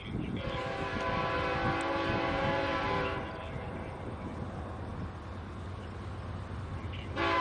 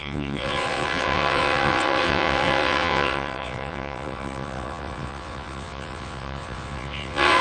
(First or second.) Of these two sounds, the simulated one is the second